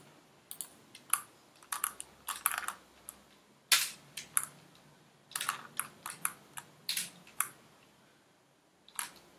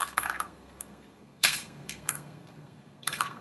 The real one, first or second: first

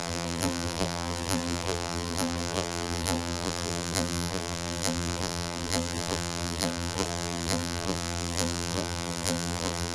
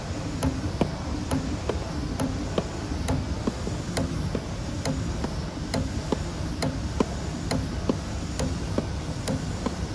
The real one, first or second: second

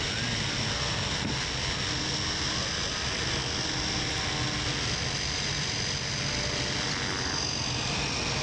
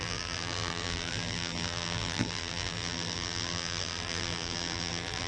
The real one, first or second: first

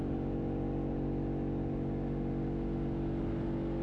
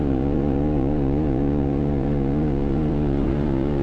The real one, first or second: first